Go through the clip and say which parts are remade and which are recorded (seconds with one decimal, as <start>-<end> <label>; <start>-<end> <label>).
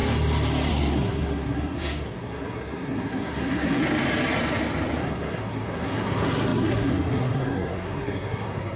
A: 0.0-0.7 recorded; 0.7-3.8 remade; 3.8-5.0 recorded; 5.0-8.8 remade